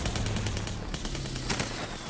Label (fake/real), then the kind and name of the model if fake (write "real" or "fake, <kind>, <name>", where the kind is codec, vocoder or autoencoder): real